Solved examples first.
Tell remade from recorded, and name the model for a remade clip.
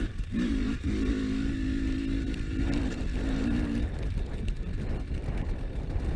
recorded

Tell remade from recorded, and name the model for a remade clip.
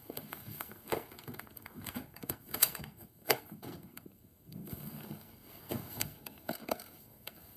remade, codec, SNAC